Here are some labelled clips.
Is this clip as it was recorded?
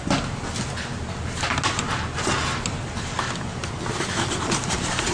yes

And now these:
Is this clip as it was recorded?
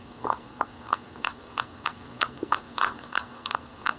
no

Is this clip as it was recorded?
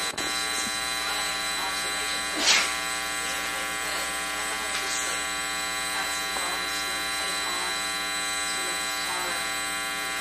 yes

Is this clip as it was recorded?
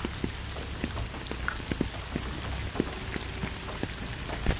yes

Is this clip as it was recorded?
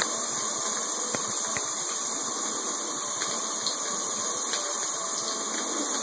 yes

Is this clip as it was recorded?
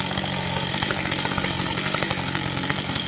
no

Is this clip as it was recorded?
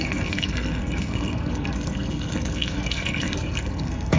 no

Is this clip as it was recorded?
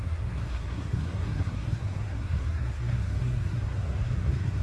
no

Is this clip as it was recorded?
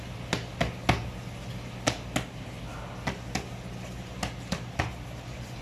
yes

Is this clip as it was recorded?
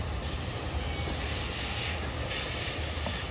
yes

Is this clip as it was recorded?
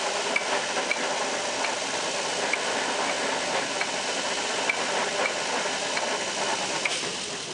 yes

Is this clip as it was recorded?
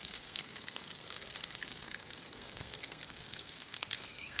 no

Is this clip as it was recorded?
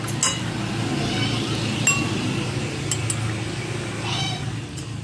yes